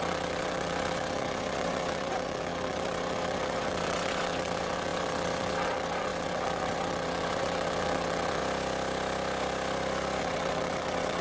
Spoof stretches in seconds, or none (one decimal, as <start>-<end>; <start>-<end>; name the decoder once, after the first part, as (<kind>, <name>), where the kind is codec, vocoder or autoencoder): 0.0-8.4 (vocoder, WaveNeXt); 10.2-11.2